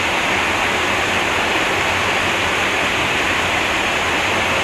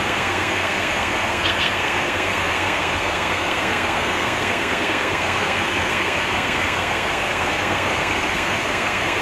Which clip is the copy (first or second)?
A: second